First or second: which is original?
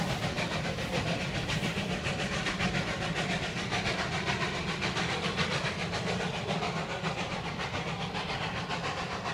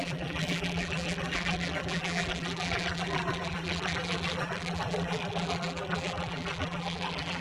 first